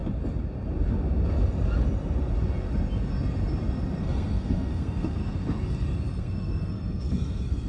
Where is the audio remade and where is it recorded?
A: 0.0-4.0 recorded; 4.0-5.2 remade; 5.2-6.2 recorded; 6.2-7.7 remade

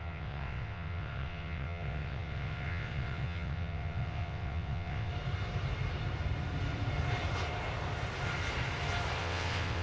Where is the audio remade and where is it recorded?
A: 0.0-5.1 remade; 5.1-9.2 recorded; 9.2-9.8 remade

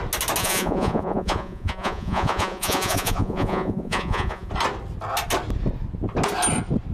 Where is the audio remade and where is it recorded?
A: 0.0-0.4 recorded; 0.4-4.5 remade; 4.5-6.9 recorded